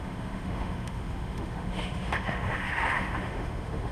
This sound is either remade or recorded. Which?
remade